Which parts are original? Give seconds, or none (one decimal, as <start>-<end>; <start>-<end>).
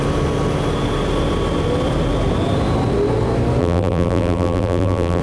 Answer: 0.0-3.6